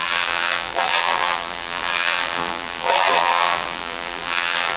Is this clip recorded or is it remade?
remade